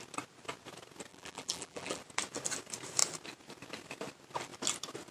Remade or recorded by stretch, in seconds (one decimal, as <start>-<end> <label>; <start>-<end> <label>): 0.0-1.1 recorded; 1.1-2.0 remade; 2.0-5.1 recorded